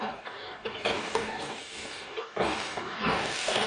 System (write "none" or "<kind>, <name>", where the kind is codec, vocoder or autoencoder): codec, DAC